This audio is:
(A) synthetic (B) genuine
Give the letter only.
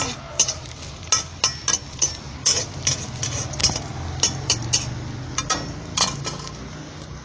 B